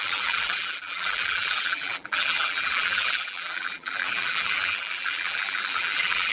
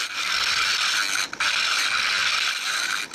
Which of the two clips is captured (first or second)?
second